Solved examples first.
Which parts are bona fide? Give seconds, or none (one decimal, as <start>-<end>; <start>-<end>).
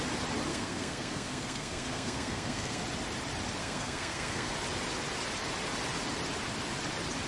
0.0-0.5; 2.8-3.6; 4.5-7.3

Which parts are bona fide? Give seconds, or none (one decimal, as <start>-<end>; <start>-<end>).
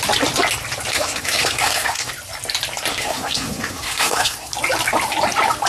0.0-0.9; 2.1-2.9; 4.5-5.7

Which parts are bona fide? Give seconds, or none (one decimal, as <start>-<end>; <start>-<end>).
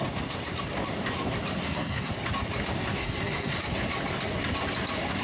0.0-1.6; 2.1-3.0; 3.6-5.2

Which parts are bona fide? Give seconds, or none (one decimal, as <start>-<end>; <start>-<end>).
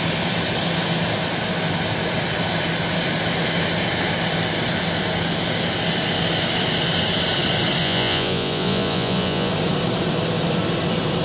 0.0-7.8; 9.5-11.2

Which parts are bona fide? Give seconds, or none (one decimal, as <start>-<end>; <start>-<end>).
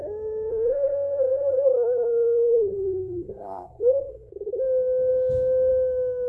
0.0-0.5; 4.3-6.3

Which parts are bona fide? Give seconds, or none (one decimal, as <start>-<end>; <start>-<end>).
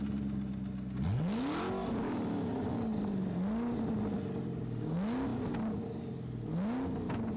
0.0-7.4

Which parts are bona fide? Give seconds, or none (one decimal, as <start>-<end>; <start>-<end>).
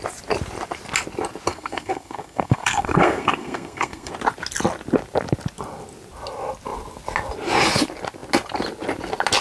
0.0-1.5; 4.1-9.4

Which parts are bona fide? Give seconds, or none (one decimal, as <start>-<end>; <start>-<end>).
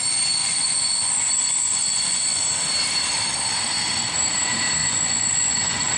0.0-0.4; 2.4-4.8